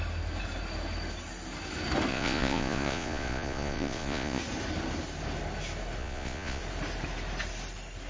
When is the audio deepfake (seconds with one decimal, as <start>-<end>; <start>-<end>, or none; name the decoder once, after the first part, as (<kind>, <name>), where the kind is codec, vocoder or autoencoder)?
2.1-4.4 (vocoder, Vocos); 6.0-6.6